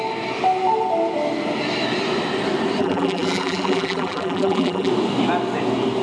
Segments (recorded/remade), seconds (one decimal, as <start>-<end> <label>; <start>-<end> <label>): 0.0-2.8 recorded; 2.8-4.9 remade; 4.9-6.0 recorded